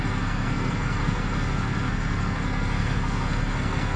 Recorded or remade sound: remade